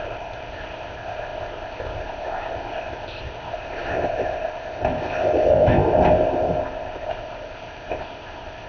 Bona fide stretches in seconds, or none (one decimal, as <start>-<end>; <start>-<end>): none